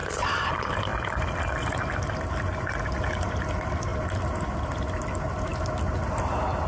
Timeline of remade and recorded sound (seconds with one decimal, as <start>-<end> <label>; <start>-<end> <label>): 0.0-0.5 remade; 0.5-6.7 recorded